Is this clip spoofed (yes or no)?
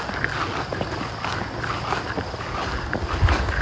no